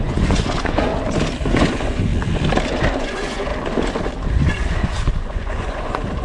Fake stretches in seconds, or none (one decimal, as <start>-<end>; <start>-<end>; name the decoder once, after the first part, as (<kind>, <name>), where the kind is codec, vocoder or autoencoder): 0.0-0.9 (vocoder, Vocos); 1.5-2.1; 3.0-3.5; 4.3-6.2